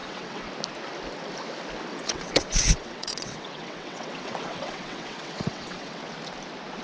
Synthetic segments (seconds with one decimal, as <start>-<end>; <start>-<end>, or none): 0.0-0.5; 1.9-6.0